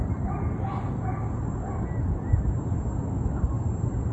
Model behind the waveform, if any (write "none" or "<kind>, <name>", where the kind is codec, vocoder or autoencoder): none